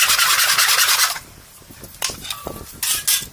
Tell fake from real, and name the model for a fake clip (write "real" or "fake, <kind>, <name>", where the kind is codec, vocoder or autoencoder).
real